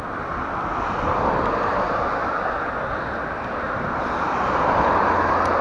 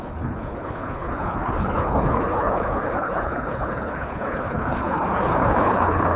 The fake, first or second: second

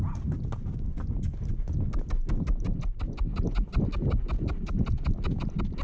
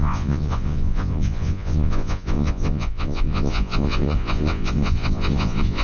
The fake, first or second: second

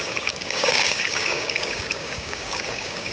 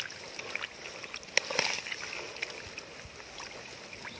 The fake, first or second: first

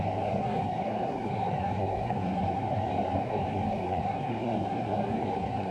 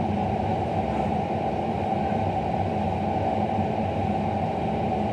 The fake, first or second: first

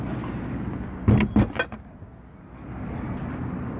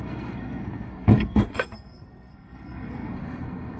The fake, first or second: second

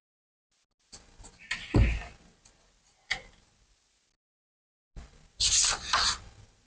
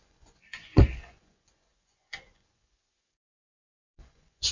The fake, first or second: second